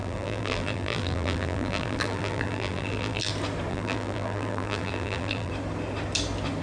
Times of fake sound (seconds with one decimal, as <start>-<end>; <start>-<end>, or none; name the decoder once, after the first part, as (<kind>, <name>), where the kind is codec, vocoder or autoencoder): 0.0-3.3 (vocoder, BigVGAN v2); 3.7-5.5